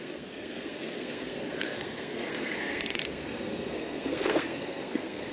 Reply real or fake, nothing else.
fake